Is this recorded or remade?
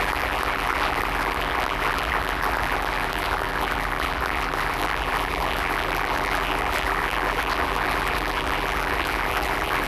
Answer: remade